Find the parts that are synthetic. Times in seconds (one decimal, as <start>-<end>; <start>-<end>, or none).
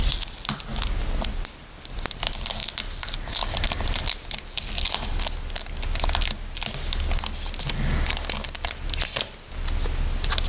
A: none